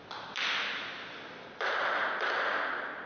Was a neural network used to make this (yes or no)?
no